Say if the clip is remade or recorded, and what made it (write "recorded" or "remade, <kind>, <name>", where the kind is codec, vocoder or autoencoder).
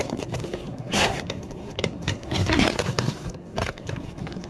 remade, codec, SNAC